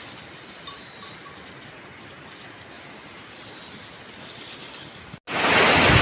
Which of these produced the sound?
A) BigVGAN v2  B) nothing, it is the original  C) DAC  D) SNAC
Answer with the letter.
B